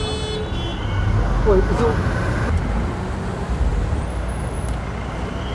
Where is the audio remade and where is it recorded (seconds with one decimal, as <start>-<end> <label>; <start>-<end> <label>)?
0.0-5.5 recorded